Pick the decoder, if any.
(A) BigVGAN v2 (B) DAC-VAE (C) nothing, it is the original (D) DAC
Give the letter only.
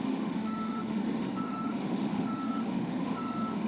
B